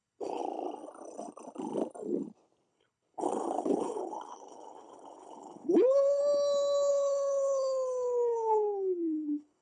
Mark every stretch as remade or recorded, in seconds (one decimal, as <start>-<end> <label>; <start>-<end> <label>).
0.0-0.4 remade; 0.4-2.7 recorded; 2.7-6.2 remade; 6.2-6.9 recorded; 6.9-9.6 remade